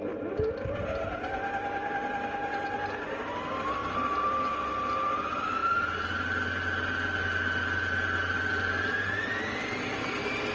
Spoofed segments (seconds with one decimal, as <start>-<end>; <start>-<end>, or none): none